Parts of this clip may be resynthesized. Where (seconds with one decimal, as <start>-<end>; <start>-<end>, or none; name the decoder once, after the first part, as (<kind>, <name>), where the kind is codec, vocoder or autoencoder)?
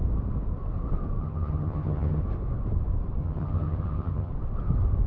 1.2-2.2 (vocoder, HiFi-GAN); 3.2-4.3